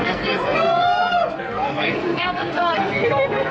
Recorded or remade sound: remade